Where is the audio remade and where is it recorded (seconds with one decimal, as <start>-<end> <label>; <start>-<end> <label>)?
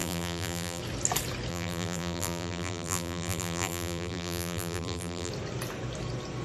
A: 0.0-0.8 remade; 0.8-1.5 recorded; 1.5-5.3 remade; 5.3-6.4 recorded